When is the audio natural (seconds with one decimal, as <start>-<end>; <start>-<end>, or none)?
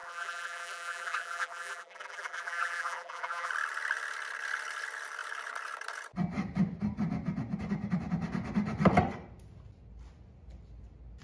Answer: 3.5-11.2